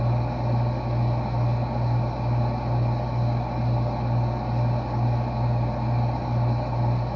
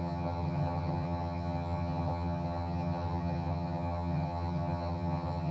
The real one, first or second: first